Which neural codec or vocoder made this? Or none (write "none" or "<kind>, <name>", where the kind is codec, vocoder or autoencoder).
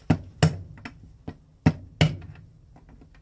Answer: none